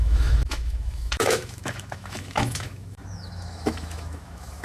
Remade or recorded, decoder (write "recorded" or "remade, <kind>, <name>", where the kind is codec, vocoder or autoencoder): remade, autoencoder, DAC-VAE